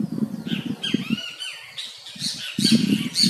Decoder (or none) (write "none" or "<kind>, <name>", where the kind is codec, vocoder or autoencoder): none